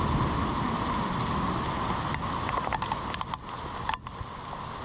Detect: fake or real real